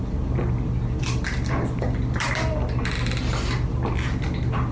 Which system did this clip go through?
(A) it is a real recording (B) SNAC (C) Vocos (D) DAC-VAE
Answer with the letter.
A